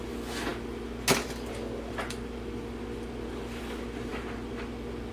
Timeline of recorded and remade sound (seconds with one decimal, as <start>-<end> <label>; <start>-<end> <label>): 0.0-5.1 recorded